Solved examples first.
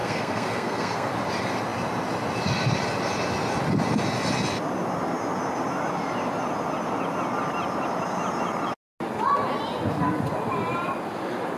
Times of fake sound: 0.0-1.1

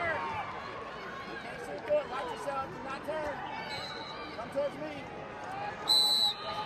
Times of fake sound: 2.8-3.4